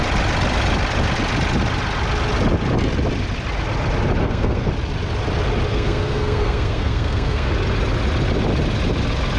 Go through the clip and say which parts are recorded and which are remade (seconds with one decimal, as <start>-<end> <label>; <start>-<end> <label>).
0.0-4.2 recorded; 4.2-4.7 remade; 4.7-5.7 recorded; 5.7-7.5 remade; 7.5-9.4 recorded